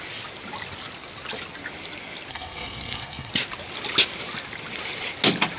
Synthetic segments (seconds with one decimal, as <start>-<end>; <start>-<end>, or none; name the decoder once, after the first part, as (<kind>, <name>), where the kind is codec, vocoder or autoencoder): 2.3-3.3 (codec, SNAC)